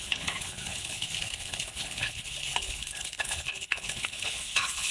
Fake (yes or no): yes